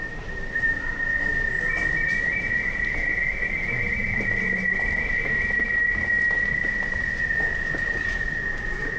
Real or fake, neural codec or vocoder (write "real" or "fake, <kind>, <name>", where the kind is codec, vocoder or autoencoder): real